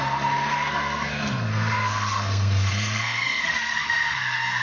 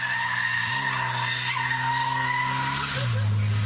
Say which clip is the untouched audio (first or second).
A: second